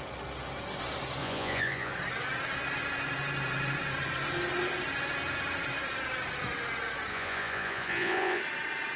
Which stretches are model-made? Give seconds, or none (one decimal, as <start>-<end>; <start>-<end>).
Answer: 1.2-1.9; 7.1-8.4